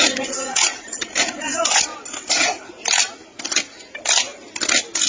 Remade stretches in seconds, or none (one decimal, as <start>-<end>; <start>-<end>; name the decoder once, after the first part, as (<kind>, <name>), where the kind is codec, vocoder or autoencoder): 0.0-1.9 (vocoder, Vocos)